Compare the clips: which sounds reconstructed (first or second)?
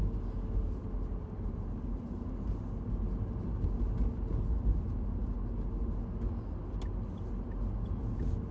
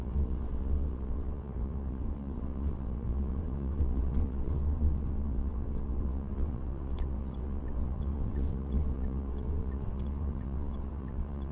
second